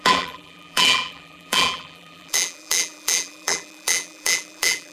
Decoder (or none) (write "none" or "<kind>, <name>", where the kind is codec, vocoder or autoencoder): vocoder, BigVGAN v2